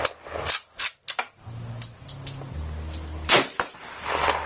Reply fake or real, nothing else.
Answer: real